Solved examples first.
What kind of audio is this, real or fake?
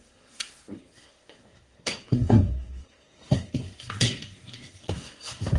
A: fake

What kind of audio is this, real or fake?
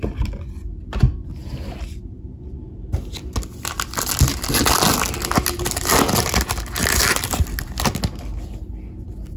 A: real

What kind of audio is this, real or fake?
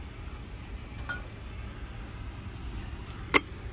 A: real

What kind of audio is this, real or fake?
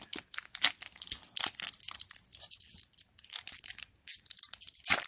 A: real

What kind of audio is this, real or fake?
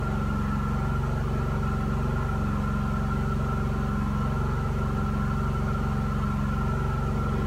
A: real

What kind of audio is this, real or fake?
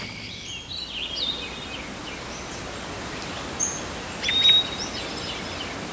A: real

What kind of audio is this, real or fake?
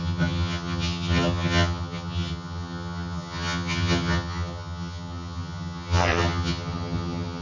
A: fake